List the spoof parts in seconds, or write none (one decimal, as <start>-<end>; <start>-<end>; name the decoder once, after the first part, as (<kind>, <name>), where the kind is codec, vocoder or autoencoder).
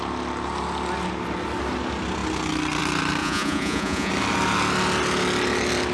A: 3.2-4.1 (vocoder, Vocos)